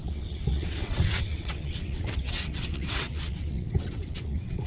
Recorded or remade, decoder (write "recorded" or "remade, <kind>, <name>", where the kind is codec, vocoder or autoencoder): remade, vocoder, WaveNeXt